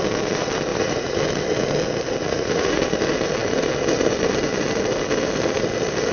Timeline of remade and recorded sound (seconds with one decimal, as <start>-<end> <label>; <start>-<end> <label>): 0.0-0.7 recorded; 0.7-1.2 remade; 1.2-2.2 recorded; 2.2-2.8 remade; 2.8-6.1 recorded